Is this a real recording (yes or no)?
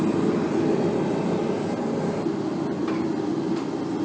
yes